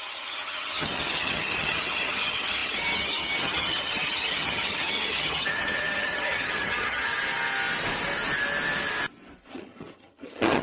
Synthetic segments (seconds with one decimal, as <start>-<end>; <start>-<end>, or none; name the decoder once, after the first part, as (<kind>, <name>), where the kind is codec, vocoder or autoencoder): 0.0-7.1 (vocoder, HiFi-GAN); 9.5-10.6